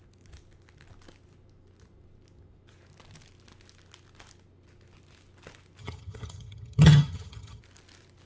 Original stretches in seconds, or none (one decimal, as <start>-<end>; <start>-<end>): 0.0-5.8; 7.6-8.3